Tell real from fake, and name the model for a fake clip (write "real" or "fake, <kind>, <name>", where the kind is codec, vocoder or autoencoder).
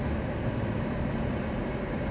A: real